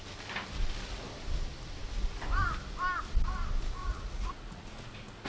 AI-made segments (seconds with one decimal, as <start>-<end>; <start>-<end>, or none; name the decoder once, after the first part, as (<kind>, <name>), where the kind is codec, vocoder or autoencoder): 3.8-5.3 (vocoder, Vocos)